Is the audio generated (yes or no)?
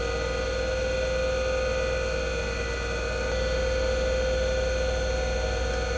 no